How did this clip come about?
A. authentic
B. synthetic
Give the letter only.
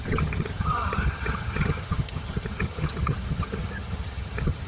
B